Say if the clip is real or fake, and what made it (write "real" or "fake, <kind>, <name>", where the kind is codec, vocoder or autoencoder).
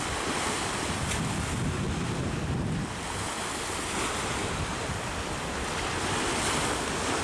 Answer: real